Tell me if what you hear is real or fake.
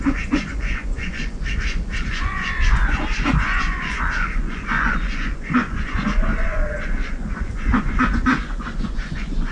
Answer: fake